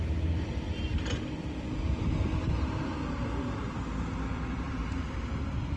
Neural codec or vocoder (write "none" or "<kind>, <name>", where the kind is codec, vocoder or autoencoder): none